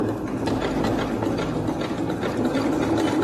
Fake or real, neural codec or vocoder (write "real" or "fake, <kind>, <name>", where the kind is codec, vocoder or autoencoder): real